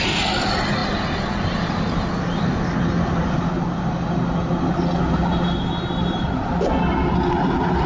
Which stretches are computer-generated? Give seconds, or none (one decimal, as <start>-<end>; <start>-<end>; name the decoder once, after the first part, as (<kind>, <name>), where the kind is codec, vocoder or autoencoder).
none